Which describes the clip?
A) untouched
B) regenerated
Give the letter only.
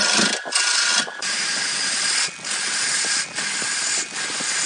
A